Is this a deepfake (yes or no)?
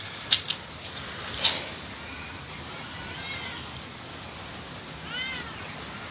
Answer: no